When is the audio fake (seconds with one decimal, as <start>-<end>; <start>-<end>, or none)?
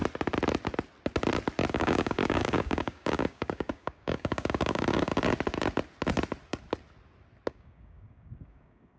1.7-5.1; 7.5-9.0